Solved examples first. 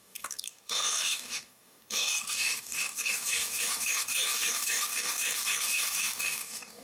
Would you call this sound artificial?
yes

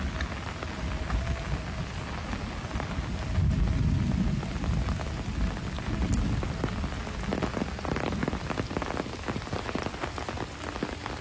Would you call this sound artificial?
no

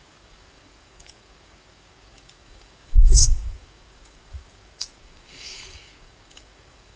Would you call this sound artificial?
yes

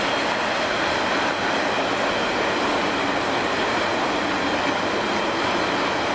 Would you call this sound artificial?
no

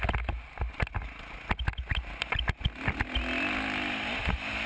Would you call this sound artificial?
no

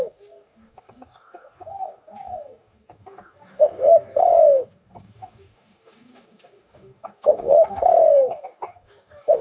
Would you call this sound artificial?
yes